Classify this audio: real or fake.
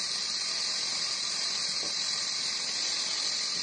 real